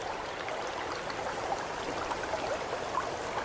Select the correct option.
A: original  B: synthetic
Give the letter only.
A